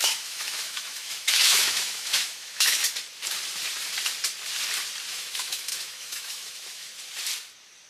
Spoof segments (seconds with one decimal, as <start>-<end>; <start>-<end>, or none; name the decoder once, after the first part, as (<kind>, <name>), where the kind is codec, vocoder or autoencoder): 0.0-2.8 (autoencoder, DAC-VAE); 5.1-6.9